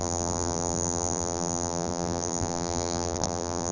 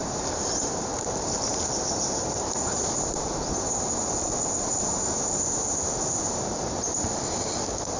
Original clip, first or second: second